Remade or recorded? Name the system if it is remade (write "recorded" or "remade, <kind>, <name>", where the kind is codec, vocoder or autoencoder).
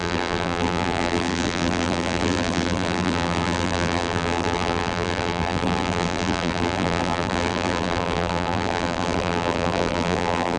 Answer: remade, vocoder, BigVGAN v2